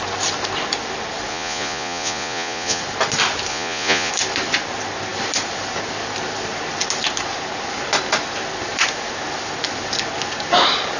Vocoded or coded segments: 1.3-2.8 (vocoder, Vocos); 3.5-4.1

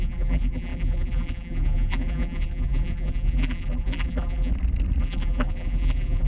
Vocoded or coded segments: 0.0-4.5 (vocoder, BigVGAN v2); 5.0-6.3

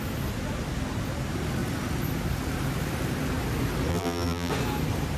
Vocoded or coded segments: 3.9-4.5 (vocoder, BigVGAN v2)

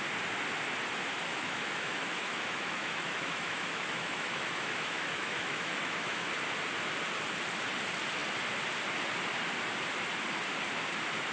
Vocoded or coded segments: 1.3-6.3 (autoencoder, DAC-VAE)

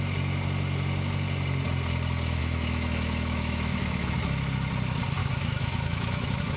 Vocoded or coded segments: 2.4-4.2 (autoencoder, DAC-VAE); 5.2-6.6

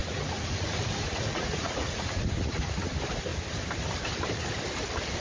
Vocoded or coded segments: 0.0-2.9 (vocoder, Vocos)

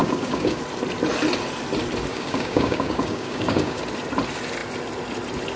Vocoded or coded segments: 0.0-0.6 (codec, DAC); 2.1-3.8